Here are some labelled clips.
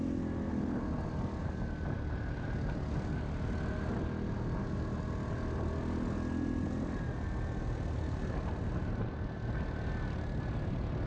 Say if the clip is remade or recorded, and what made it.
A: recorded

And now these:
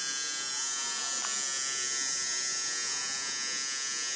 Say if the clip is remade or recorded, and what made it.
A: recorded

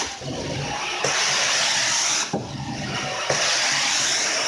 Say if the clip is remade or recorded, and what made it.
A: recorded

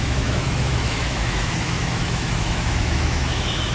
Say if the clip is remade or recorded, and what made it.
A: remade, autoencoder, DAC-VAE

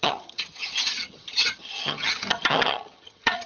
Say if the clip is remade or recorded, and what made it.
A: remade, vocoder, HiFi-GAN